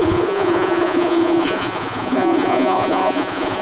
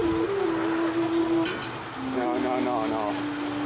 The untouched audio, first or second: second